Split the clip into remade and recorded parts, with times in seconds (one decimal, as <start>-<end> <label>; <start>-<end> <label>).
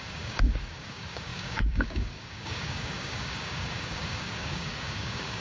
0.0-5.4 remade